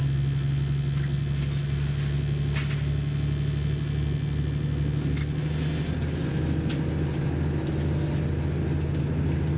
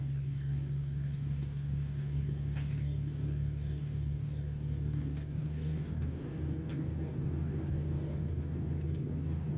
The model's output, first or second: second